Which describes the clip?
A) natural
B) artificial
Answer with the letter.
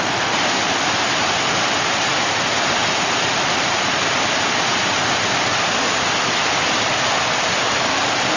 A